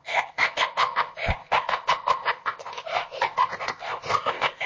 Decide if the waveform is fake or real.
fake